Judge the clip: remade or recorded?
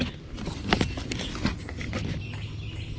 recorded